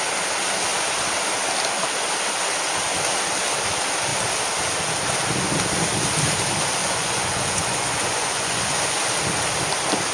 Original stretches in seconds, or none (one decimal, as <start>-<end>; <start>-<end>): 0.0-6.8; 9.0-10.1